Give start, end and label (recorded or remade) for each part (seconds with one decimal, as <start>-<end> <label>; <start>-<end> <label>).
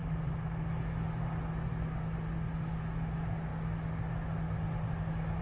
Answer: 0.0-5.4 recorded